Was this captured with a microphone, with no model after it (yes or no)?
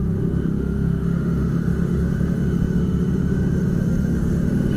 no